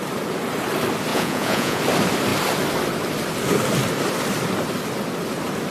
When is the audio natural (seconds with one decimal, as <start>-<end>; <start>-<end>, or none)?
0.0-1.1; 1.8-5.7